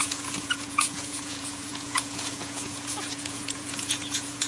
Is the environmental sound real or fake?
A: fake